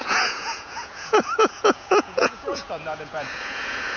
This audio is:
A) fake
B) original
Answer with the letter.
A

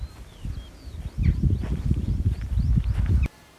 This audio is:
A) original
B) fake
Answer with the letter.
A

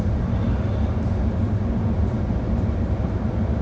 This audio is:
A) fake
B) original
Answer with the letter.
B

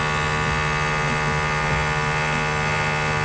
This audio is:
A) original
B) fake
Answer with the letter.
A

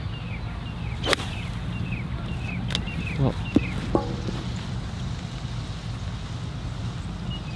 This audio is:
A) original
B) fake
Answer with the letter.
A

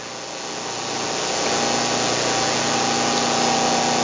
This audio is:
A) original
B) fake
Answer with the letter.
A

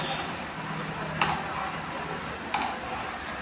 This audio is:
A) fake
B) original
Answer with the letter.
B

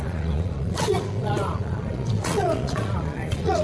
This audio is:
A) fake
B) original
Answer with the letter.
A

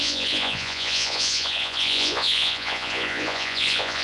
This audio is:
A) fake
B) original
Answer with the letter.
A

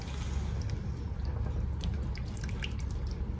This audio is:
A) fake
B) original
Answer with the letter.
B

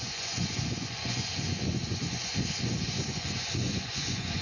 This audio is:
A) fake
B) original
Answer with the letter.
A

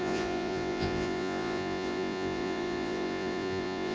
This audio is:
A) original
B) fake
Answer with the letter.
B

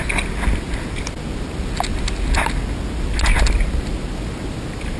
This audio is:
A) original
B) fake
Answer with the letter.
A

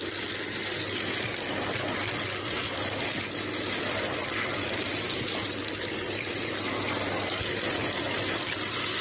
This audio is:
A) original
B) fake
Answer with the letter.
A